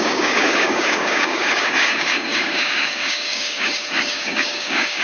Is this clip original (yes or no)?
no